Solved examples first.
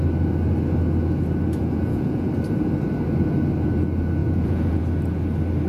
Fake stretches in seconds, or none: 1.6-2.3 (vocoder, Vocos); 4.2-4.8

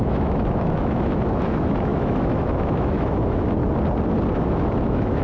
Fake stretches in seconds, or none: 0.0-3.6 (autoencoder, DAC-VAE); 4.3-5.2

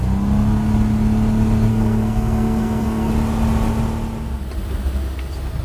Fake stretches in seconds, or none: 1.7-3.1 (codec, SNAC)

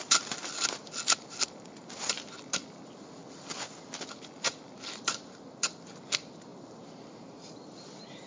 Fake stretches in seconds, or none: 0.0-3.2 (vocoder, BigVGAN v2); 4.3-6.5; 7.5-8.3

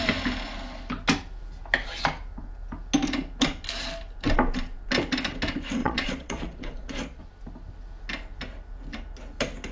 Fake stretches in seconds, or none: 5.8-7.2 (vocoder, Vocos)

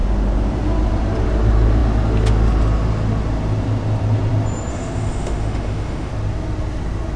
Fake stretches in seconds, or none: 4.7-6.1 (autoencoder, DAC-VAE)

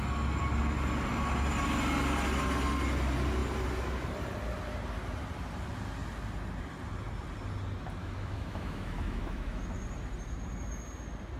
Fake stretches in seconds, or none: 8.0-9.6 (autoencoder, DAC-VAE)

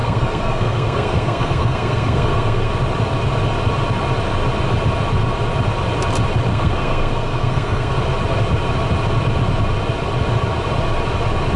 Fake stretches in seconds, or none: 0.0-2.7 (codec, SNAC); 6.5-7.9